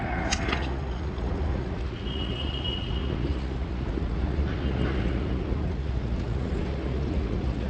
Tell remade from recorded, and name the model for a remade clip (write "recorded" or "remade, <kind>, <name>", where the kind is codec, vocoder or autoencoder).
remade, vocoder, Vocos